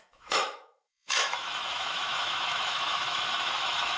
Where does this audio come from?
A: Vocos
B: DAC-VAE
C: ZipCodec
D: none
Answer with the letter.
B